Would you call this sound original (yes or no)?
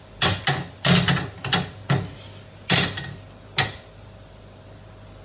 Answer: yes